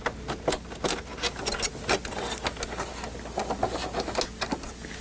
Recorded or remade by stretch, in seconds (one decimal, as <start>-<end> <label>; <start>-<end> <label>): 0.0-5.0 recorded